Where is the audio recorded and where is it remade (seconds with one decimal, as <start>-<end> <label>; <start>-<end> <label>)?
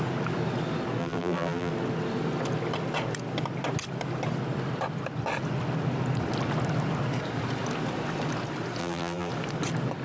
0.0-1.0 recorded; 1.0-1.7 remade; 1.7-8.8 recorded; 8.8-9.3 remade; 9.3-10.0 recorded